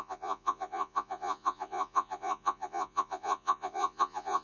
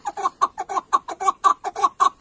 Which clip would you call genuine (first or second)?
second